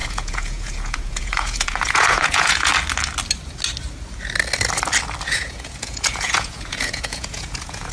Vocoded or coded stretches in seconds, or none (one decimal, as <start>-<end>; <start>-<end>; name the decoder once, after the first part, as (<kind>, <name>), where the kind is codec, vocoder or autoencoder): 0.0-2.7 (vocoder, Vocos); 5.3-7.9